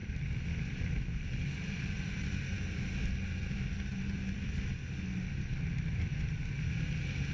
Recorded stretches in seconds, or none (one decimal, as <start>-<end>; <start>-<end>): 2.4-7.3